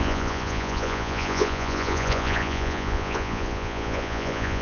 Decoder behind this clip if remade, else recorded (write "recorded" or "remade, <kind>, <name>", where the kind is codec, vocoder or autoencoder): remade, vocoder, Vocos